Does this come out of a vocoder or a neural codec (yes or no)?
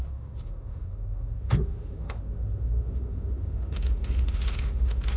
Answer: yes